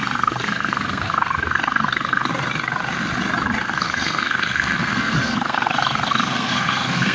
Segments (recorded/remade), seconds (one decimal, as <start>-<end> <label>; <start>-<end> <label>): 0.0-2.3 remade; 2.3-3.6 recorded; 3.6-7.1 remade